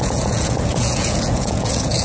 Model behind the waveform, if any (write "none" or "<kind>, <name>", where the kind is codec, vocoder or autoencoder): vocoder, Vocos